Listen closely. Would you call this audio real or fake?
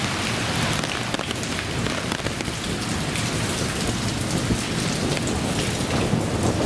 real